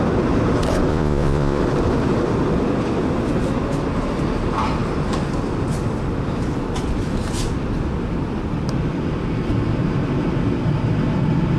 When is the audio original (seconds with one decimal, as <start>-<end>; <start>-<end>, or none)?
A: 0.0-0.9; 1.6-11.6